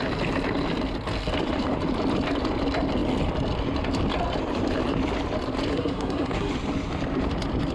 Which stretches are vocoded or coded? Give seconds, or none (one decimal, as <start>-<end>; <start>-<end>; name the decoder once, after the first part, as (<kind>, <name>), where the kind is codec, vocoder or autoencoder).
5.7-6.5 (codec, SNAC)